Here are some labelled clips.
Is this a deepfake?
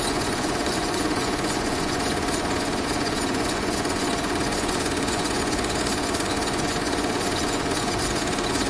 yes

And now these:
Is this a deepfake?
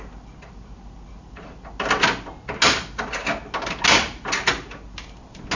no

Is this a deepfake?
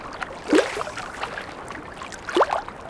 no